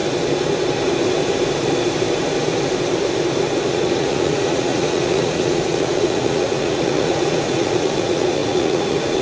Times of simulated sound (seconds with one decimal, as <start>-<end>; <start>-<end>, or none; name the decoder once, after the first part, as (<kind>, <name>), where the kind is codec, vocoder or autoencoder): 3.7-9.2 (vocoder, Vocos)